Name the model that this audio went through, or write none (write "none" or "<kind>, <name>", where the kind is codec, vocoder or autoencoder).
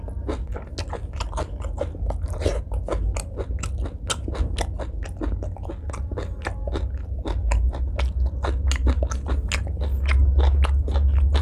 none